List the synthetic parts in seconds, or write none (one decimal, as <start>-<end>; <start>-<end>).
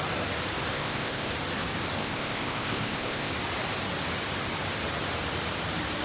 0.7-1.3; 2.0-3.3